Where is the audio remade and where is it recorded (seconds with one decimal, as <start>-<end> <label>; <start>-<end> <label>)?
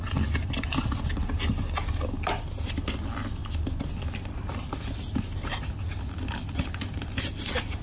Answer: 0.0-7.8 recorded